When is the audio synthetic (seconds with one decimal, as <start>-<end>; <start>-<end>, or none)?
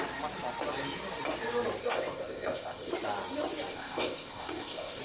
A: 1.8-2.9; 3.7-5.0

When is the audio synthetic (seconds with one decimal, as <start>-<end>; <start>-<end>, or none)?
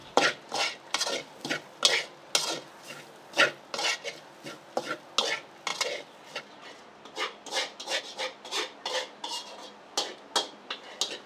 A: 0.0-1.0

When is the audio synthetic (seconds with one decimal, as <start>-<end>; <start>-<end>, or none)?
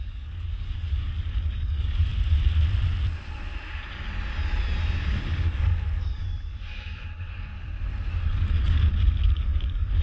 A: 0.0-2.1; 5.1-7.5; 8.2-10.0